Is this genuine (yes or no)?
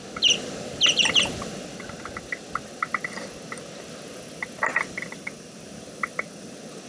yes